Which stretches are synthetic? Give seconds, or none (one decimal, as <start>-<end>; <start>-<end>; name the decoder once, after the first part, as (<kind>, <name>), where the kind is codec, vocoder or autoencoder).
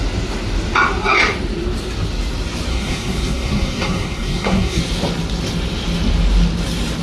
2.7-4.8 (codec, SNAC)